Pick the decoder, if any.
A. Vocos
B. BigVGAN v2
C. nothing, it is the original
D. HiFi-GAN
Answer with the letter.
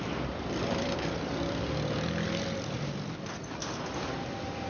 B